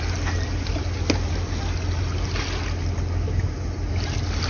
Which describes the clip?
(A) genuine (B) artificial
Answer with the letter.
A